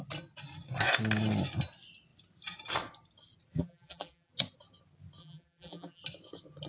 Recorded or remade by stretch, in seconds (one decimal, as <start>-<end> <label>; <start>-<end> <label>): 0.0-3.5 recorded; 3.5-4.3 remade; 4.3-5.2 recorded; 5.2-6.0 remade; 6.0-6.7 recorded